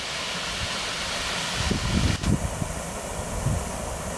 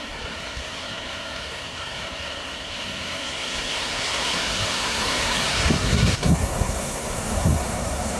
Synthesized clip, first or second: second